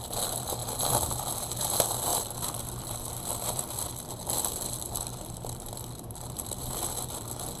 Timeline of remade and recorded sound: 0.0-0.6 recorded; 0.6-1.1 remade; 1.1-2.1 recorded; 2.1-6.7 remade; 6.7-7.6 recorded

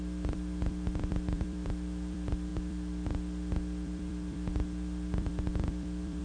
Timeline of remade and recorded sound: 0.0-6.2 remade

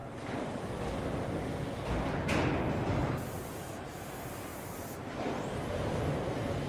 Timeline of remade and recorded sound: 0.0-4.5 recorded; 4.5-6.7 remade

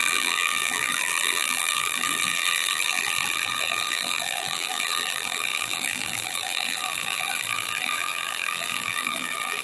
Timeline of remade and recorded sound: 0.0-9.6 remade

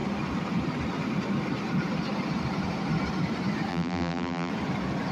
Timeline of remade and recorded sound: 0.0-3.7 recorded; 3.7-4.5 remade; 4.5-5.1 recorded

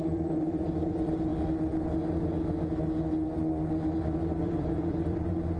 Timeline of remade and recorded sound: 0.0-1.3 remade; 1.3-4.4 recorded; 4.4-5.6 remade

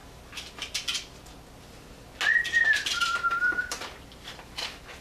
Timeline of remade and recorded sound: 0.0-3.0 recorded; 3.0-5.0 remade

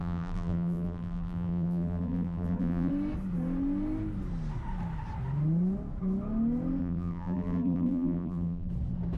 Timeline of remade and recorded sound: 0.0-2.9 remade; 2.9-6.8 recorded; 6.8-8.7 remade; 8.7-9.2 recorded